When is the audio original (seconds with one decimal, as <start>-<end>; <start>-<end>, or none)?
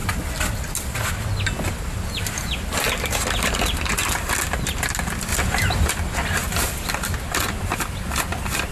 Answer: 0.0-4.8; 5.3-5.9; 6.4-7.6